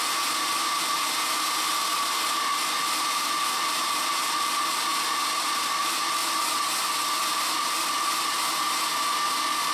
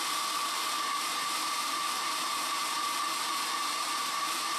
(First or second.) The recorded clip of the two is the first